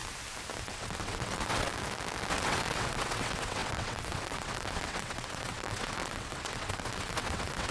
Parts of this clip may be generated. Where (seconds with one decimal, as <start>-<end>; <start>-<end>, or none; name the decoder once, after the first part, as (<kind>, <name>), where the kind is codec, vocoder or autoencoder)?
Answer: 0.6-1.7 (vocoder, WaveNeXt); 2.3-7.7